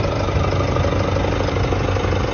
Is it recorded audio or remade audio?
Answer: recorded